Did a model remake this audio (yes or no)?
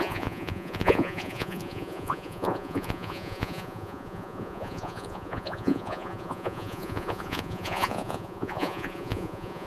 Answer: yes